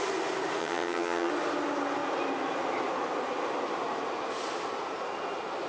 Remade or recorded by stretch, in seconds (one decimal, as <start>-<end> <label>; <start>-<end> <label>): 0.0-0.6 recorded; 0.6-1.3 remade; 1.3-5.7 recorded